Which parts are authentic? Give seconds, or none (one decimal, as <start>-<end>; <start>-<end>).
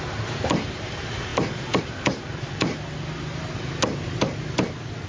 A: 2.7-5.1